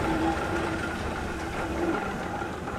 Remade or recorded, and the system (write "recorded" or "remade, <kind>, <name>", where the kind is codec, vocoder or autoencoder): remade, vocoder, BigVGAN v2